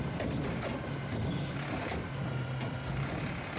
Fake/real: real